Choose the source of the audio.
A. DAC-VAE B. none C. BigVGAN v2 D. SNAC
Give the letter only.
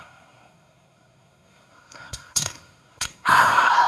D